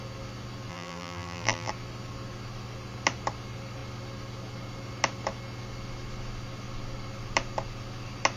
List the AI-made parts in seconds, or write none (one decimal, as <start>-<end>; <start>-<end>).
0.7-1.7